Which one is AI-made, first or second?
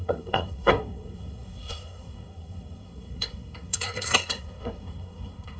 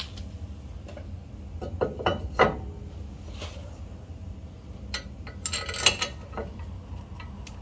first